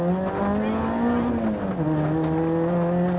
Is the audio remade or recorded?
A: recorded